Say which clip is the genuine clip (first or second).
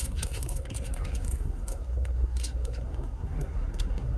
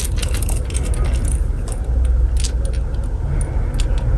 second